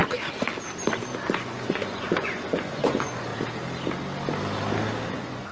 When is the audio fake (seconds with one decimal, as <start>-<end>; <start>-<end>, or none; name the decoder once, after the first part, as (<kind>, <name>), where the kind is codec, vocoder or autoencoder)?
1.4-3.3 (vocoder, Vocos); 5.1-5.5